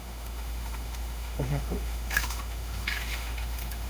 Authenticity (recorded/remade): remade